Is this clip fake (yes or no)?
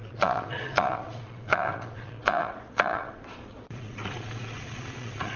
yes